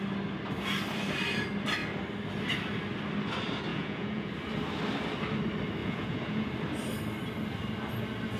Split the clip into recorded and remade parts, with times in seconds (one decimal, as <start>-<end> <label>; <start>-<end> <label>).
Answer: 0.0-3.7 recorded; 3.7-4.3 remade; 4.3-5.8 recorded; 5.8-6.5 remade; 6.5-8.4 recorded